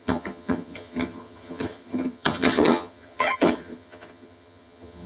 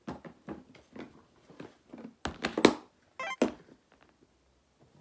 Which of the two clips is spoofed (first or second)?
first